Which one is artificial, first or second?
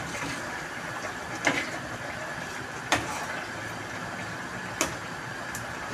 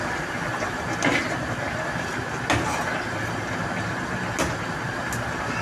first